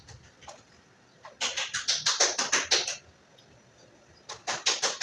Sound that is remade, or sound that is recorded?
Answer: recorded